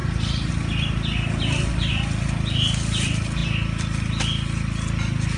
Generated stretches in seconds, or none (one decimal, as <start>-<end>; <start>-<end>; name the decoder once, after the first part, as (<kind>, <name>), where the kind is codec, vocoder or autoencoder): none